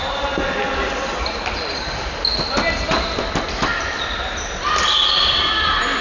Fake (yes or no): no